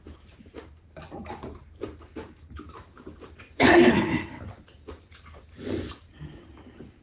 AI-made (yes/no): yes